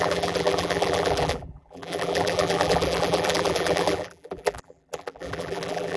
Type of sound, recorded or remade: remade